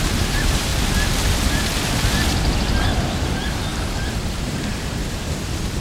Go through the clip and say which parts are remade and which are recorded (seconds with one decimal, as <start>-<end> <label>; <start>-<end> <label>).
0.0-0.7 remade; 0.7-3.0 recorded; 3.0-3.7 remade; 3.7-4.3 recorded; 4.3-4.7 remade; 4.7-5.8 recorded

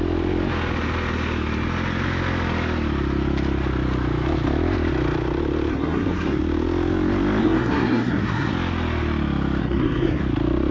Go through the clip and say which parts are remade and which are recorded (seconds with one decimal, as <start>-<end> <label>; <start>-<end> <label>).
0.0-5.7 recorded; 5.7-6.4 remade; 6.4-7.4 recorded; 7.4-8.5 remade; 8.5-9.6 recorded; 9.6-10.2 remade; 10.2-10.7 recorded

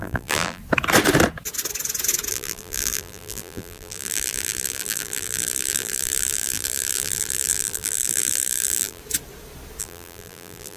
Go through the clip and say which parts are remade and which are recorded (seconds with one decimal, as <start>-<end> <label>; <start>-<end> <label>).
0.0-0.6 remade; 0.6-2.3 recorded; 2.3-9.0 remade; 9.0-9.8 recorded; 9.8-10.8 remade

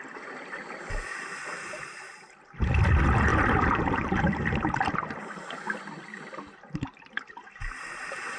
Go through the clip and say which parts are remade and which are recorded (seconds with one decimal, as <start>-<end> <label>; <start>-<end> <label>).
0.0-3.3 recorded; 3.3-4.3 remade; 4.3-8.4 recorded

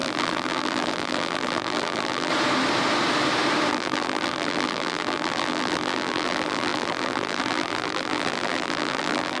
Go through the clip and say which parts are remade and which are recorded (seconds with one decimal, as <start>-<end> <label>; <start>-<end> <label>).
0.0-2.3 remade; 2.3-3.7 recorded; 3.7-9.4 remade